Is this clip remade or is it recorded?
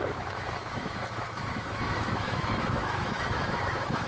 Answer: remade